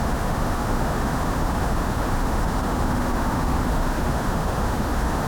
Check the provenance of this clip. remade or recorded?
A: remade